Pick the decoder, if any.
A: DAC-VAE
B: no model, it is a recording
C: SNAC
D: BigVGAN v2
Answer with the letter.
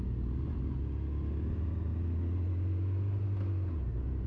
B